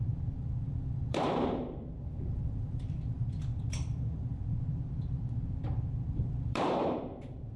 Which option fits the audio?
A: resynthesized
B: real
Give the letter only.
A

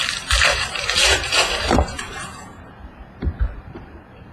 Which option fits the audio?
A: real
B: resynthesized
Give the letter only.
B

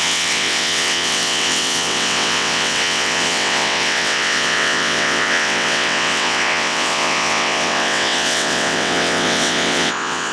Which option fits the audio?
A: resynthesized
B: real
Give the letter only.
A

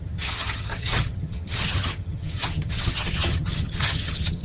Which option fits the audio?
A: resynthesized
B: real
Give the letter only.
A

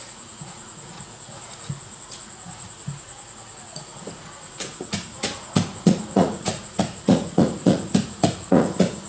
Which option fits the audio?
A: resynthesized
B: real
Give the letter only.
A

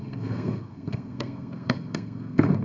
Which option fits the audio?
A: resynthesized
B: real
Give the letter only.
A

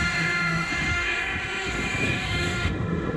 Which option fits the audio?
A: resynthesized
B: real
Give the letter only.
A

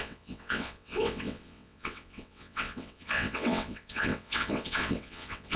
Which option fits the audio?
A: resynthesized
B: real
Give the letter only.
A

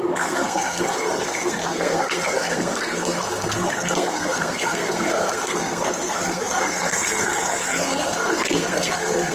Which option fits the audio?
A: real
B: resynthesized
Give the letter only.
B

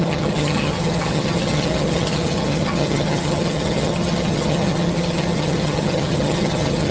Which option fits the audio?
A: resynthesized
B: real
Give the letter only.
A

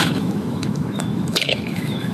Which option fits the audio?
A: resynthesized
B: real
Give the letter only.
A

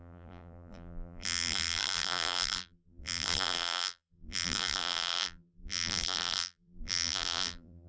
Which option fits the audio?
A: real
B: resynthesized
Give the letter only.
B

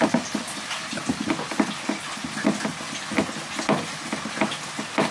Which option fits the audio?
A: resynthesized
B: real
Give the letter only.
B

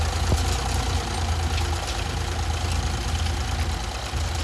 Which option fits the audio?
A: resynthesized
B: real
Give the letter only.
B